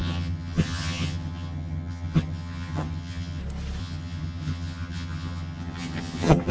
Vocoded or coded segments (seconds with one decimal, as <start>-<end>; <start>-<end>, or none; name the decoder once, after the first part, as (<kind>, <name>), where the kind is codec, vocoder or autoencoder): 0.0-3.4 (vocoder, HiFi-GAN); 3.8-6.5